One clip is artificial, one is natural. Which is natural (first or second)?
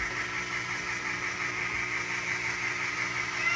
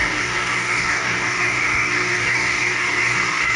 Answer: first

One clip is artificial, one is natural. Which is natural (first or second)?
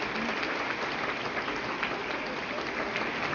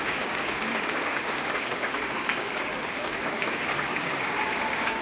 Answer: first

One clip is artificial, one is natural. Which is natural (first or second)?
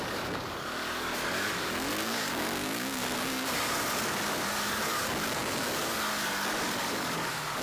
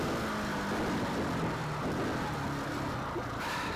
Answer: second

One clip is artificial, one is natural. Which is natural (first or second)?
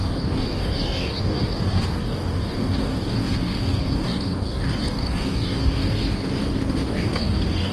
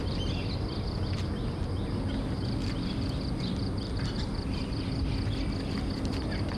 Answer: second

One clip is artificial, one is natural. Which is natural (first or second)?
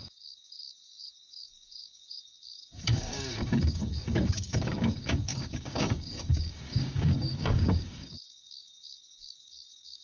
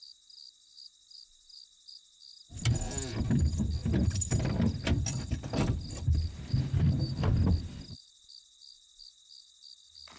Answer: second